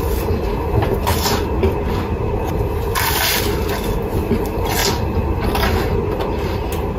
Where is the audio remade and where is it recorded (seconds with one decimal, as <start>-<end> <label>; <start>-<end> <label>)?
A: 0.0-7.0 recorded